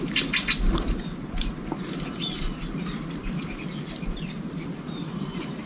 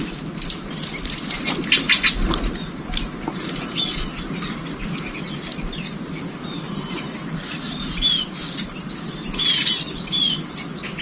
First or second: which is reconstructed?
first